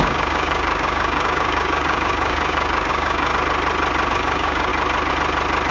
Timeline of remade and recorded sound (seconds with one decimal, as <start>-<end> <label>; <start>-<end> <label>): 0.0-3.3 remade; 3.3-4.1 recorded; 4.1-4.7 remade; 4.7-5.7 recorded